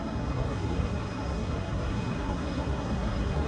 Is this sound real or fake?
fake